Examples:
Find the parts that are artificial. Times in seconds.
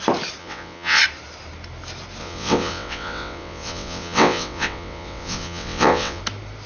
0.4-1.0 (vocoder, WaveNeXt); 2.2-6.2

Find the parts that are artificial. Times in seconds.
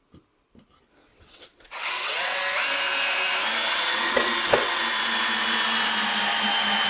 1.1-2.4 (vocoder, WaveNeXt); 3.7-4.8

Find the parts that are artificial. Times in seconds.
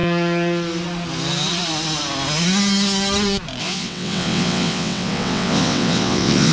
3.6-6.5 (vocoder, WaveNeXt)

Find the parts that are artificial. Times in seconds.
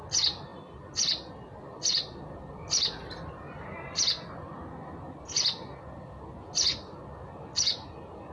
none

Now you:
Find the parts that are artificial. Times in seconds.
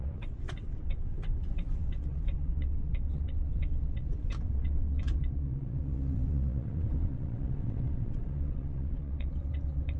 0.0-10.0 (vocoder, WaveNeXt)